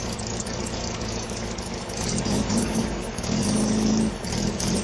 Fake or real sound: fake